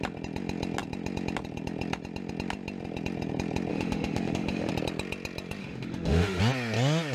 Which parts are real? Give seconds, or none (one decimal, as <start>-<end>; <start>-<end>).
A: 0.0-3.7; 4.7-5.6; 6.4-7.1